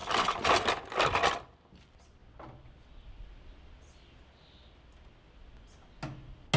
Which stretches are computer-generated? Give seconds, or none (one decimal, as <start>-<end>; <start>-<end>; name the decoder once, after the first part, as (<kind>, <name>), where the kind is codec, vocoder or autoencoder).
none